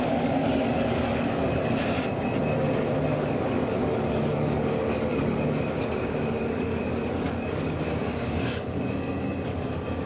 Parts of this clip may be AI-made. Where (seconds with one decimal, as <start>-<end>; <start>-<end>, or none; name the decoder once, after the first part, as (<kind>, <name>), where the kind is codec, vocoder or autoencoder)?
0.0-1.8 (codec, DAC); 3.1-10.1